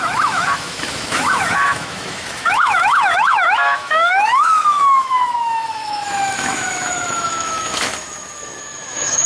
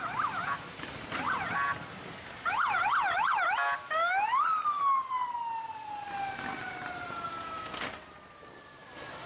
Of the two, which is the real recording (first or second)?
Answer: second